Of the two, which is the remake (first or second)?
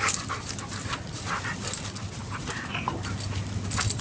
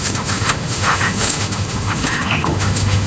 second